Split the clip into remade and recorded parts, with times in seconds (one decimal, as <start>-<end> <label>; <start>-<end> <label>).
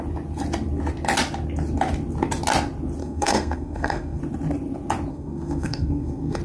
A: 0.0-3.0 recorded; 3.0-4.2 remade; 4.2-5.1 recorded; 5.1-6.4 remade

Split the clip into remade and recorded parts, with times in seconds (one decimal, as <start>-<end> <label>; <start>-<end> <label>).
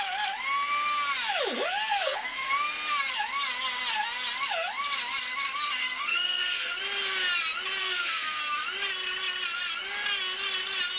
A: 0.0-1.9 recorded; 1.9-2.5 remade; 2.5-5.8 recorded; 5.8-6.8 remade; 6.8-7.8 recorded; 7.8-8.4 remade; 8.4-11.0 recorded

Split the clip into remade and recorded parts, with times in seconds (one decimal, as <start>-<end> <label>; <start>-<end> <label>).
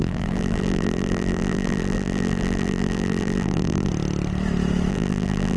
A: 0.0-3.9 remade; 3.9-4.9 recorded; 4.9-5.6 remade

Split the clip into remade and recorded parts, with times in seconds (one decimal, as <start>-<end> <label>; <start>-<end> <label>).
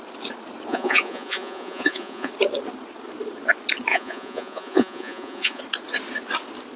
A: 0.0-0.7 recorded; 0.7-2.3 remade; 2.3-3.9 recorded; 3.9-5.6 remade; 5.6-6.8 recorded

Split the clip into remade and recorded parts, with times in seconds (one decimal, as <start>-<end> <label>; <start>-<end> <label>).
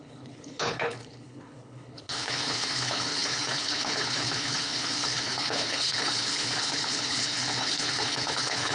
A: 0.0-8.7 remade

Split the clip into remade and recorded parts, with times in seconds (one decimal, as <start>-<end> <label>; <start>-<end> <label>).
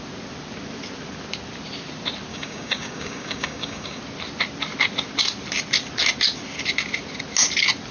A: 0.0-2.3 recorded; 2.3-4.0 remade; 4.0-7.9 recorded